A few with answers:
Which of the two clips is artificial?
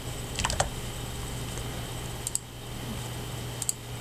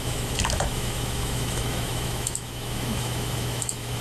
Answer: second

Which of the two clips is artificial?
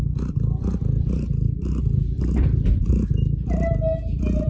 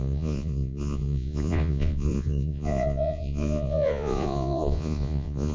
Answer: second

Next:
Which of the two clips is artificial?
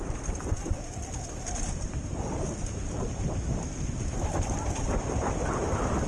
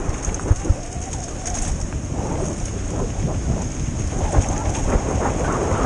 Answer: first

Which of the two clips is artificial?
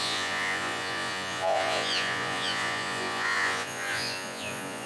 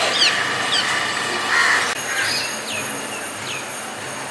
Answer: first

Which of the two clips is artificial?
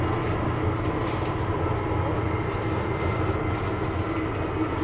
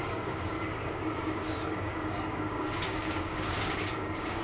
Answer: second